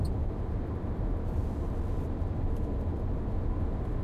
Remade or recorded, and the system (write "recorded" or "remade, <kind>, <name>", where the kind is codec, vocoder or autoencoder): recorded